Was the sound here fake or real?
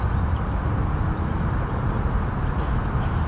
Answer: real